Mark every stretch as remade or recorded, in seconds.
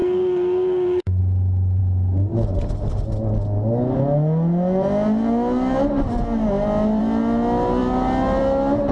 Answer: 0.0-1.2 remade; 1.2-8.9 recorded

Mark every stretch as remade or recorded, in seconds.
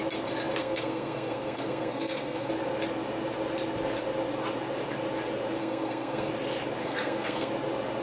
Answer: 0.0-0.6 recorded; 0.6-2.5 remade; 2.5-5.6 recorded; 5.6-6.3 remade; 6.3-6.8 recorded; 6.8-7.5 remade; 7.5-8.0 recorded